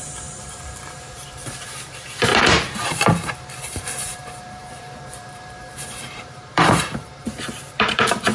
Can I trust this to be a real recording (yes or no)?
no